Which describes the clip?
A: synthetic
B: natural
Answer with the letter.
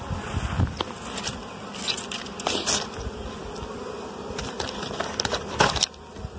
B